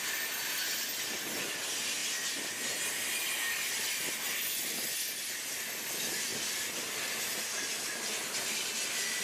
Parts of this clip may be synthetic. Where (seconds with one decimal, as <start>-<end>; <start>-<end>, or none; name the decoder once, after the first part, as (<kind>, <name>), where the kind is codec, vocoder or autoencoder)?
none